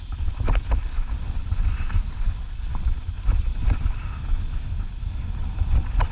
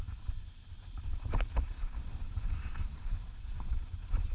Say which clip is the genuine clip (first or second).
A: first